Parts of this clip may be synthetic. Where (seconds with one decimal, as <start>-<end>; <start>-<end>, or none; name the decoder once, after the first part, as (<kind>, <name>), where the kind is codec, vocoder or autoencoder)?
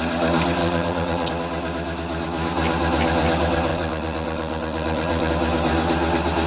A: 0.6-1.3 (vocoder, WaveNeXt); 3.7-5.3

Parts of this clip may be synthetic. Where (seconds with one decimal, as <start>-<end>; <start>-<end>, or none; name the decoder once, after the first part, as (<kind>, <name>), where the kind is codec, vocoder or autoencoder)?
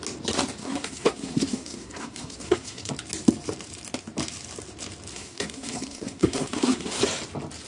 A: 0.6-2.9 (codec, SNAC); 5.1-7.0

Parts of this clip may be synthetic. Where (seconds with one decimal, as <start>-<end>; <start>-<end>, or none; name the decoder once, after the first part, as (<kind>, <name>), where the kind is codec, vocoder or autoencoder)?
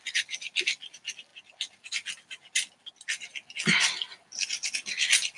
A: none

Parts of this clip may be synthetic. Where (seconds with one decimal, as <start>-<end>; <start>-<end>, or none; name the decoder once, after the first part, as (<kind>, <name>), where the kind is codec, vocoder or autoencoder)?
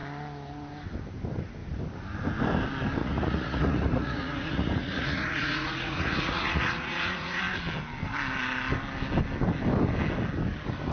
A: 3.0-7.4 (vocoder, Vocos)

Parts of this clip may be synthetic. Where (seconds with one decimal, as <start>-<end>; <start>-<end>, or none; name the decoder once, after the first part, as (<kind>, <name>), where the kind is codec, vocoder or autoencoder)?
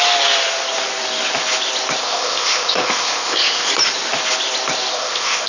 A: 2.0-3.7 (codec, ZipCodec); 4.9-5.5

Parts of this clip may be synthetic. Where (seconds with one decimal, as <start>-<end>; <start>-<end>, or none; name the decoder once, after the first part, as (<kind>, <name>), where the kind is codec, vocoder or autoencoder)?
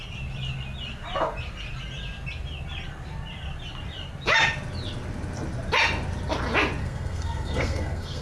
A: 6.8-8.2 (codec, SNAC)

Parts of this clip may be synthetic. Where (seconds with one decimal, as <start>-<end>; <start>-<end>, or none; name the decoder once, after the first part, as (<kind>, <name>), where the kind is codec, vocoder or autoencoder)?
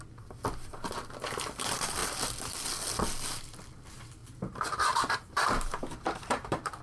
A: 4.2-6.8 (vocoder, BigVGAN v2)